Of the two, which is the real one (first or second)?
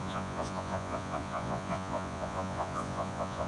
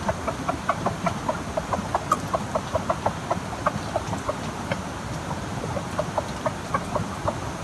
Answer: second